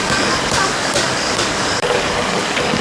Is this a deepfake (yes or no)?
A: yes